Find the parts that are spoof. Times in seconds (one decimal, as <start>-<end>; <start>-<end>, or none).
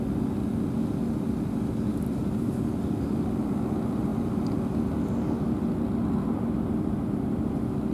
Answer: 1.9-2.6